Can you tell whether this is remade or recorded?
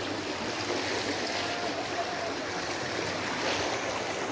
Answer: recorded